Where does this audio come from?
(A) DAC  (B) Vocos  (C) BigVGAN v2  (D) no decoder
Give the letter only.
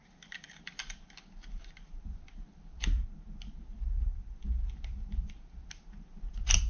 D